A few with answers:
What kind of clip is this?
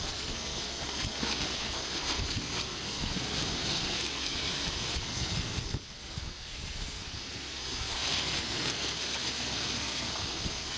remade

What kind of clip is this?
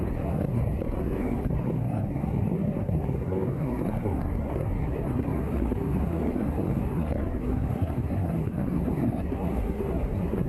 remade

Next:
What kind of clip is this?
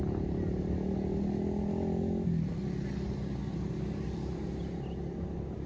recorded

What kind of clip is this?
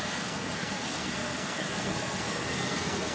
remade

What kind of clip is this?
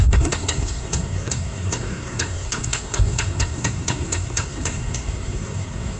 remade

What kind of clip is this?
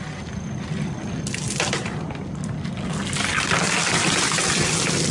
recorded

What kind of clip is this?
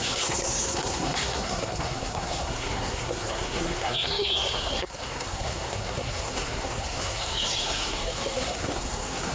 remade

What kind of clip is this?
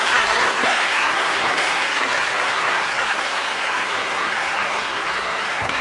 remade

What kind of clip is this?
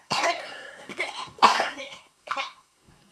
remade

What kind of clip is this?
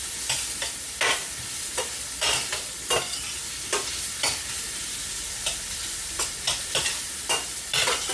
recorded